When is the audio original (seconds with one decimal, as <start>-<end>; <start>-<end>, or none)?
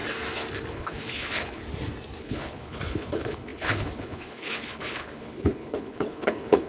0.0-0.7; 1.6-2.2